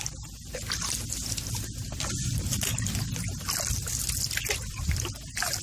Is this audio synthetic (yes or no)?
no